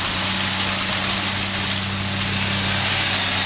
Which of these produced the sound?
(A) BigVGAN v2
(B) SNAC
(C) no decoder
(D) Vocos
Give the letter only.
C